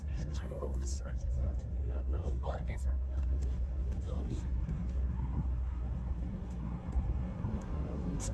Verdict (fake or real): fake